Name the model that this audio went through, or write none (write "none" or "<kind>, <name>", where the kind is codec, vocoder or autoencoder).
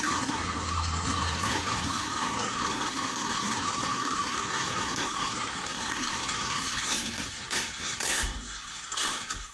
codec, SNAC